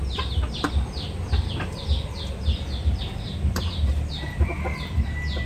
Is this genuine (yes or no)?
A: yes